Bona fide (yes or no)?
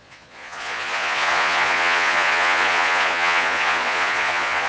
no